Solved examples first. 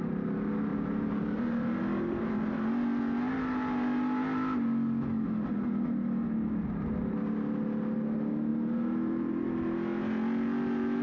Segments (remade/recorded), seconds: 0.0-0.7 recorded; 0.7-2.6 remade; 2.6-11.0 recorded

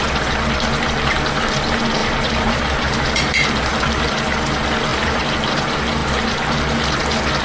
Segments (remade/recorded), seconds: 0.0-2.0 recorded; 2.0-4.0 remade; 4.0-4.9 recorded; 4.9-5.6 remade; 5.6-7.4 recorded

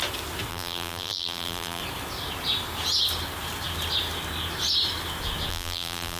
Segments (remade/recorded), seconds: 0.0-0.5 recorded; 0.5-1.8 remade; 1.8-5.5 recorded; 5.5-6.2 remade

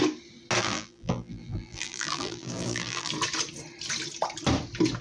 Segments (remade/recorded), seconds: 0.0-0.6 recorded; 0.6-3.1 remade; 3.1-5.0 recorded

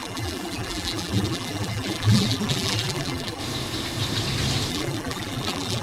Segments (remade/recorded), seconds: 0.0-3.4 remade; 3.4-4.7 recorded; 4.7-5.8 remade

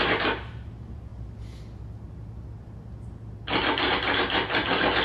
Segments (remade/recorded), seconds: 0.0-1.1 remade; 1.1-3.9 recorded; 3.9-5.0 remade